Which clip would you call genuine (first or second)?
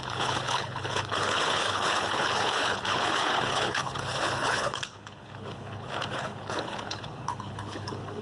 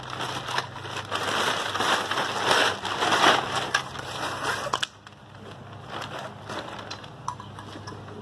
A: second